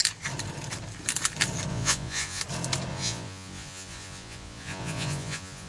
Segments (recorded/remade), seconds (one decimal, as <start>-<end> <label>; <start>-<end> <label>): 0.0-1.7 recorded; 1.7-2.4 remade; 2.4-2.9 recorded; 2.9-5.7 remade